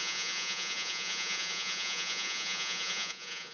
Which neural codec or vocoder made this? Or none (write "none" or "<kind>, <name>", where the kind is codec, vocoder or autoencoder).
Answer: vocoder, Vocos